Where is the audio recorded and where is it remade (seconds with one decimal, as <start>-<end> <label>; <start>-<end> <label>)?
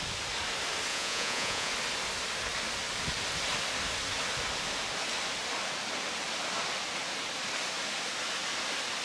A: 0.0-0.9 recorded; 0.9-1.7 remade; 1.7-9.0 recorded